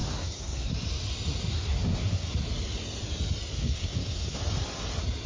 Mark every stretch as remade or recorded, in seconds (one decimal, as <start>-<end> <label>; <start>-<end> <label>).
0.0-0.7 remade; 0.7-1.5 recorded; 1.5-2.3 remade; 2.3-3.6 recorded; 3.6-4.4 remade; 4.4-5.3 recorded